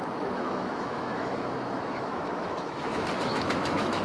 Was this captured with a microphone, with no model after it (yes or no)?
no